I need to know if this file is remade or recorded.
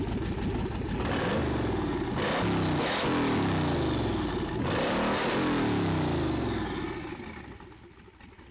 recorded